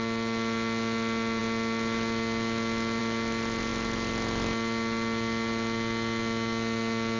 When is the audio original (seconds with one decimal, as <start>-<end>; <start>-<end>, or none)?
0.0-7.2